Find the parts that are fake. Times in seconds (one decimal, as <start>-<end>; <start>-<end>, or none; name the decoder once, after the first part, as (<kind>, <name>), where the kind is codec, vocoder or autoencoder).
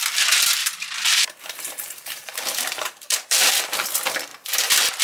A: 0.6-3.6 (vocoder, BigVGAN v2)